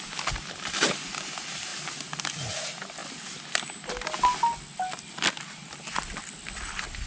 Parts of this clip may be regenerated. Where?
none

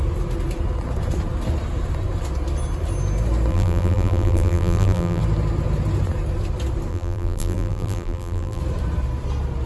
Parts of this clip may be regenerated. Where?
3.5-5.2 (vocoder, BigVGAN v2); 6.9-8.6